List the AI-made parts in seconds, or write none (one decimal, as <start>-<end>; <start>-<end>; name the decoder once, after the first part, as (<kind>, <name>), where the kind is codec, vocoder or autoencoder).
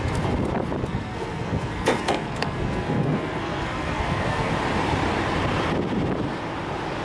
0.8-4.5 (codec, SNAC)